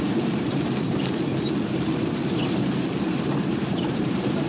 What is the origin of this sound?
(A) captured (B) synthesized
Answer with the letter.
B